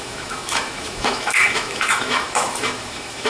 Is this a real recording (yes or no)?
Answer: no